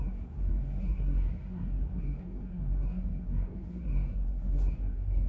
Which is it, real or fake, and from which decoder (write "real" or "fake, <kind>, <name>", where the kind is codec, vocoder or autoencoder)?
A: fake, codec, SNAC